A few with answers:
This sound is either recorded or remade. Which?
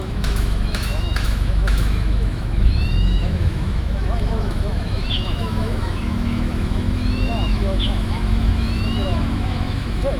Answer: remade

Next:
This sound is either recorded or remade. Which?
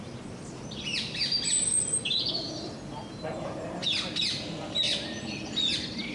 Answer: recorded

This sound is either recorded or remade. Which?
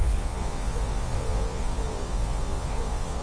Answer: remade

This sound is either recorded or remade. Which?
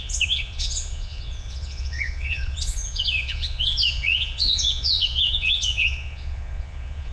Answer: remade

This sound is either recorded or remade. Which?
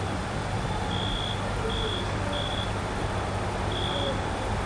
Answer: recorded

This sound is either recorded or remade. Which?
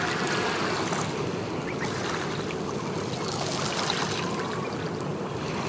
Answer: recorded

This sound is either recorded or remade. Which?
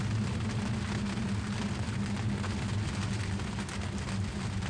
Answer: recorded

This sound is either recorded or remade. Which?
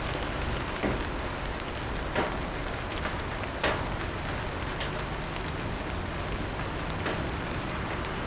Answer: recorded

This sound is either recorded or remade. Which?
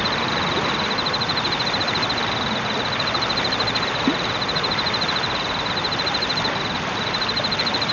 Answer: recorded